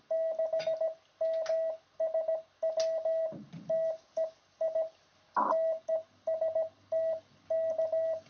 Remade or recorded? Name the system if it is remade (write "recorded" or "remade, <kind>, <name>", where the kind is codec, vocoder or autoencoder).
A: recorded